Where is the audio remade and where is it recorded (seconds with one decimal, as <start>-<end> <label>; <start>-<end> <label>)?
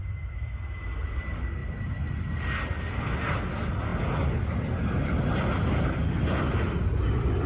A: 0.0-7.5 recorded